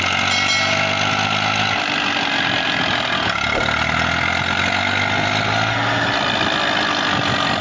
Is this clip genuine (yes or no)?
yes